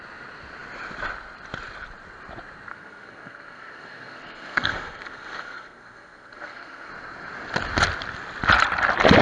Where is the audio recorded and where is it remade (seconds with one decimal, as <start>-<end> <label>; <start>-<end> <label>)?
0.0-2.7 recorded; 2.7-6.9 remade; 6.9-9.2 recorded